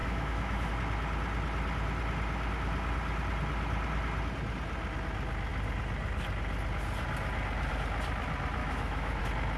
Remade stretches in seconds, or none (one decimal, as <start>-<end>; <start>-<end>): 0.0-0.7; 8.6-9.2